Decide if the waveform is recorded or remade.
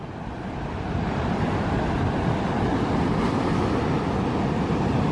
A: recorded